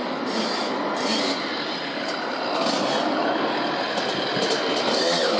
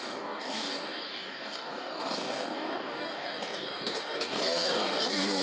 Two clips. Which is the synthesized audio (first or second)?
second